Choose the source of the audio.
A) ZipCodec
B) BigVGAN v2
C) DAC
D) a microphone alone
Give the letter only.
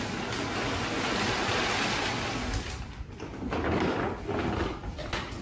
D